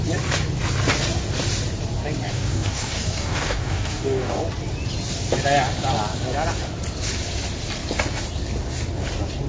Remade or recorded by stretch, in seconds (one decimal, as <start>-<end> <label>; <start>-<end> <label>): 0.0-2.3 recorded; 2.3-4.4 remade; 4.4-9.5 recorded